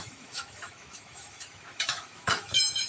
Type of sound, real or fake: fake